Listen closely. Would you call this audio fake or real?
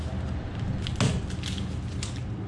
real